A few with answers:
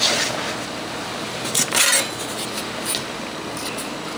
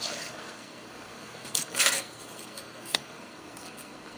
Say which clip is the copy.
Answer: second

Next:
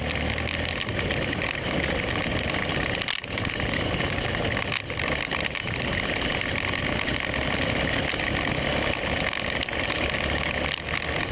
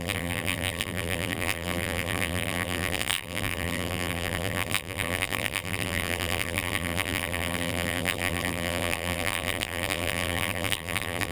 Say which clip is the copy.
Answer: second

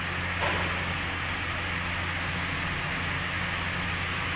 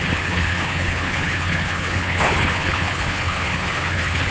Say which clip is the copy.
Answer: second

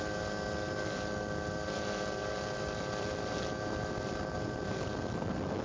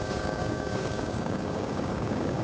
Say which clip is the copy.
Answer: second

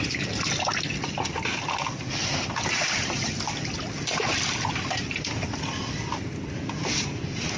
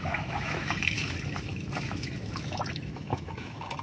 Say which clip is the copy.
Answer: second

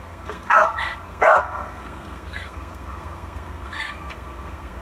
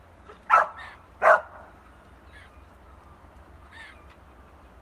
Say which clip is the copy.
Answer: first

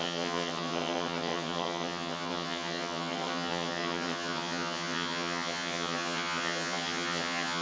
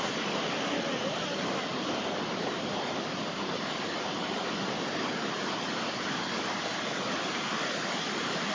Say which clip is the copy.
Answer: first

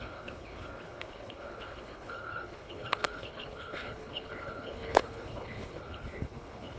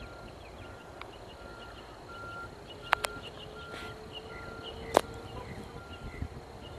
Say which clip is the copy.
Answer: first